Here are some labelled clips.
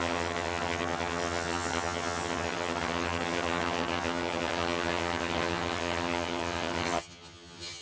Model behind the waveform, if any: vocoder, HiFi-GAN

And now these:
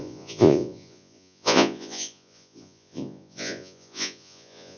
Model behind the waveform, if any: vocoder, Vocos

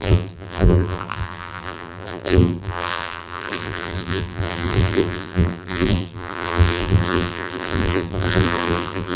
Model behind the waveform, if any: vocoder, BigVGAN v2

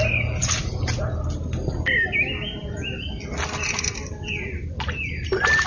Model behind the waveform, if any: none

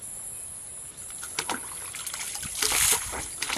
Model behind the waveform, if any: none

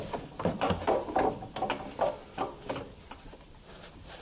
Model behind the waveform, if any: none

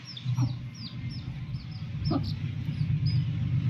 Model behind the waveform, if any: none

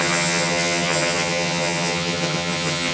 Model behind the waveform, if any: vocoder, HiFi-GAN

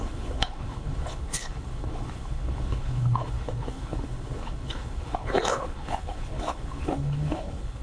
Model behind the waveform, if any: codec, HILCodec